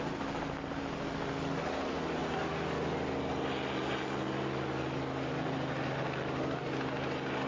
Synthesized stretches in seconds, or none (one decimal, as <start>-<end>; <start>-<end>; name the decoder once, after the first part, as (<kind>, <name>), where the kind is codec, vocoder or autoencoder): none